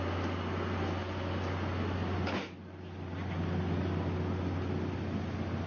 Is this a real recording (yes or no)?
yes